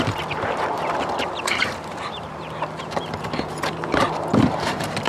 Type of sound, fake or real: fake